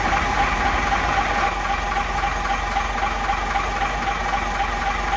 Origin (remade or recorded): recorded